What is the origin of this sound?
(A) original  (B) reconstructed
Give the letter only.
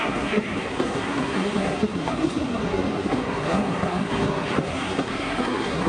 B